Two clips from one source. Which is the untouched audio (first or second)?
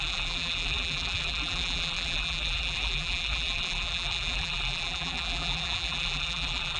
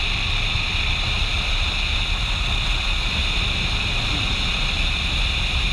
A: second